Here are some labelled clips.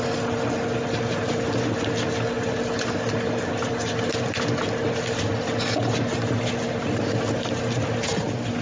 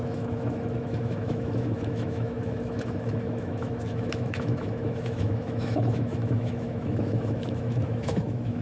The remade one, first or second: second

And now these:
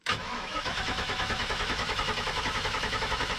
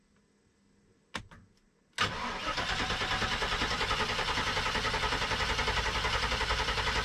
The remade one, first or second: first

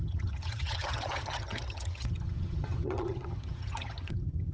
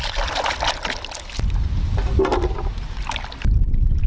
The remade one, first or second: first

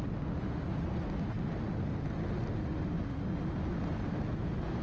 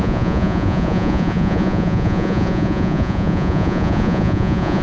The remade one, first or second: second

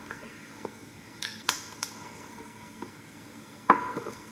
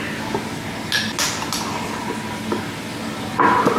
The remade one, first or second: first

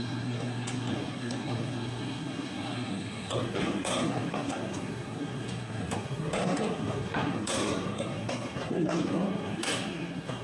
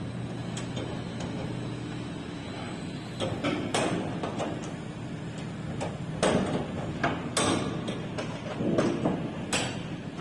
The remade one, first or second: first